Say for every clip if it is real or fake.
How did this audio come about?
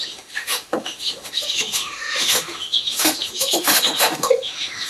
fake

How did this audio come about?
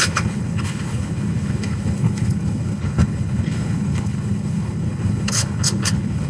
fake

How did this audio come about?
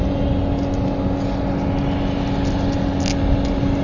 real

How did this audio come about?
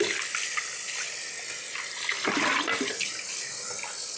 real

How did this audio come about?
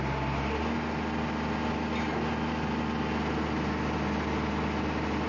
real